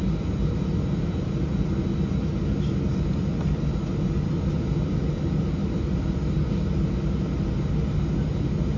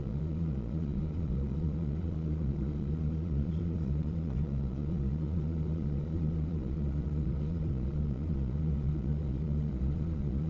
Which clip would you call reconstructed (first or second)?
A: second